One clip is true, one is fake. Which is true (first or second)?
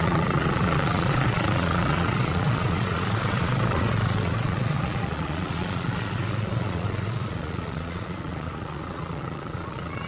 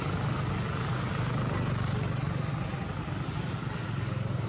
second